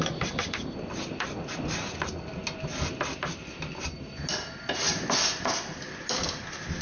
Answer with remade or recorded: recorded